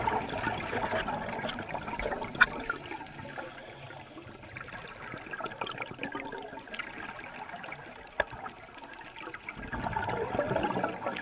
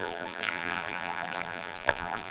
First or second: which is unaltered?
first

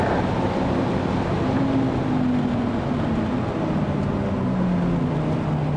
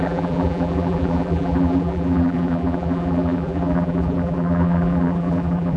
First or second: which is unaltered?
first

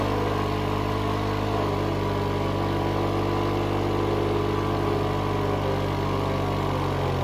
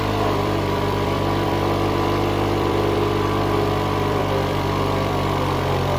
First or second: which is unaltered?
first